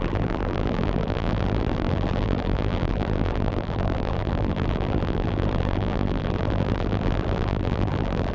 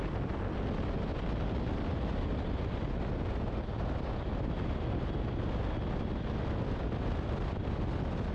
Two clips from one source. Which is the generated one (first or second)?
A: first